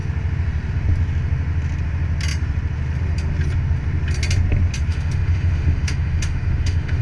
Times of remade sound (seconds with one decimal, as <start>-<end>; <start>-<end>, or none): 4.9-7.0

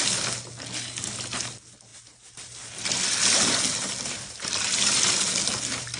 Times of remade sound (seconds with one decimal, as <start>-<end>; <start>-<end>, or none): none

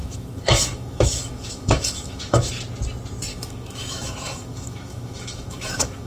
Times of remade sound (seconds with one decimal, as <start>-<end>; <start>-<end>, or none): 0.0-2.5; 3.3-6.1

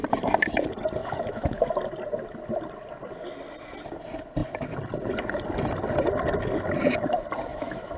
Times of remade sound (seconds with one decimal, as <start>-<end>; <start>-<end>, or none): 1.0-1.8; 7.5-8.0

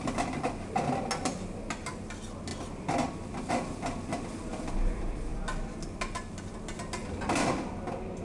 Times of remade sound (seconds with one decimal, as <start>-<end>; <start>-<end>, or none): none

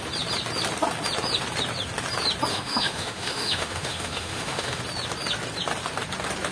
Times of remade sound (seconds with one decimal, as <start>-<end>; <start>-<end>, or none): 2.5-4.8

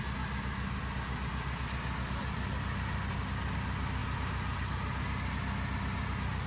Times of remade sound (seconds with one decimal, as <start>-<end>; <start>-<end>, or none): none

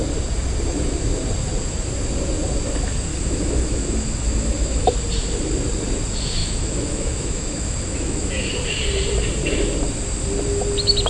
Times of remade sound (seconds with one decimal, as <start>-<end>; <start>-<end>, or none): 3.1-4.9; 6.4-8.5